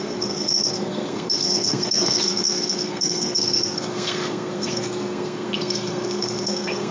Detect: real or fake fake